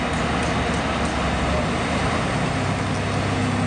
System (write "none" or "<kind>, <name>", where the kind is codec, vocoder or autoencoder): none